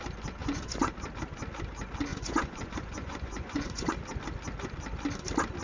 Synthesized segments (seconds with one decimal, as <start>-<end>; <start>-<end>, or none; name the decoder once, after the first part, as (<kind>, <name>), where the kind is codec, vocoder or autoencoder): 0.4-0.9 (vocoder, Vocos); 2.1-3.9